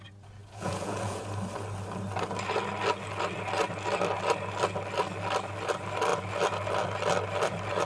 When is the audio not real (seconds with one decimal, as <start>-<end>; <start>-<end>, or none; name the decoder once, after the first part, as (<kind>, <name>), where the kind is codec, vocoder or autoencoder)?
0.4-1.2 (vocoder, Vocos)